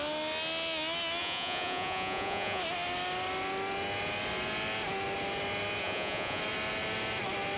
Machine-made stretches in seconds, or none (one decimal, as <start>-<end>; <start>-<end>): 1.2-2.6; 5.8-6.4